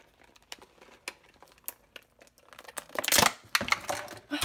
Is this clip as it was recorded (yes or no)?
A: yes